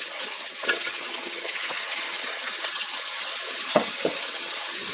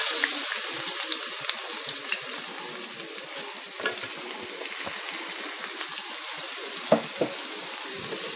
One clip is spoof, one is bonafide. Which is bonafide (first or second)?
second